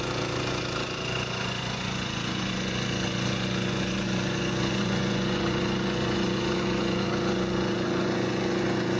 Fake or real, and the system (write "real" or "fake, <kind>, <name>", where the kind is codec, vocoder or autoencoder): fake, vocoder, Vocos